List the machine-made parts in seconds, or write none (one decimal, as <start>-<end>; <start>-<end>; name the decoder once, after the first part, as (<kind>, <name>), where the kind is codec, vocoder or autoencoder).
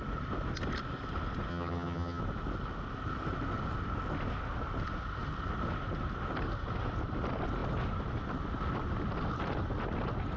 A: 1.5-2.2 (vocoder, HiFi-GAN)